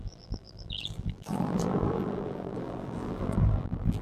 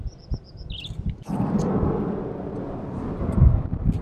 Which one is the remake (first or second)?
first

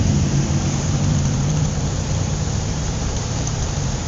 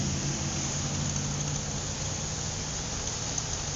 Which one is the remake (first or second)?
first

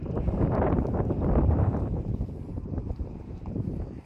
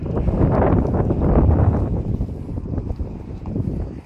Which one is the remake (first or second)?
first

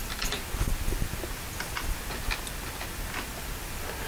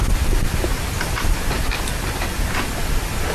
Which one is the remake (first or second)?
second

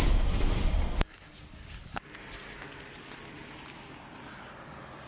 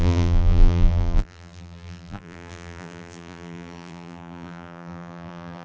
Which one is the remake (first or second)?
second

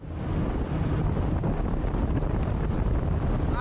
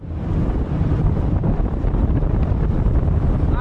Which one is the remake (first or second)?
second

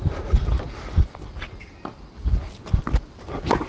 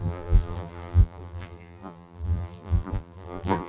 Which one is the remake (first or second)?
second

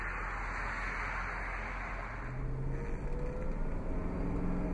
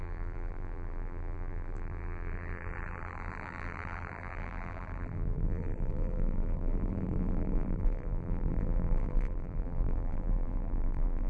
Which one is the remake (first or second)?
second